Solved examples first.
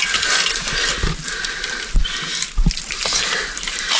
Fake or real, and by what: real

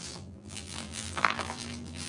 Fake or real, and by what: fake, vocoder, BigVGAN v2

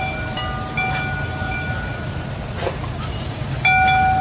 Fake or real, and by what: real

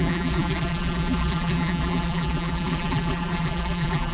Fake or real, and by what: fake, vocoder, BigVGAN v2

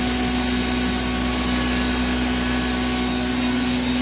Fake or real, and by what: real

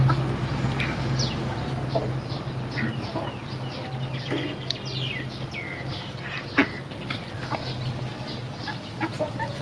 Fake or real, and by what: real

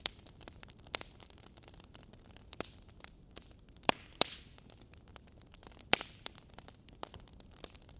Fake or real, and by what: fake, vocoder, BigVGAN v2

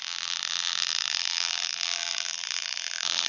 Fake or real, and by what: fake, vocoder, BigVGAN v2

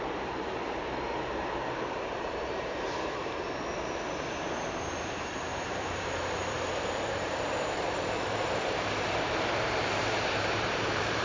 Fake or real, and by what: fake, vocoder, BigVGAN v2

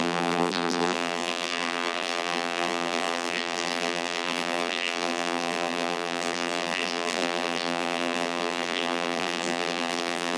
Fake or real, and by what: fake, vocoder, BigVGAN v2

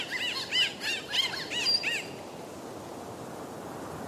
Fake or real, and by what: real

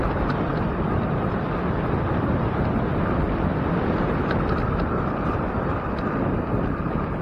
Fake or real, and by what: fake, vocoder, BigVGAN v2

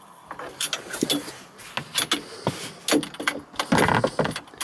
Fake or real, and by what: real